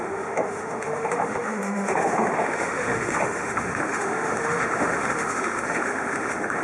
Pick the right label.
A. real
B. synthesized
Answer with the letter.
B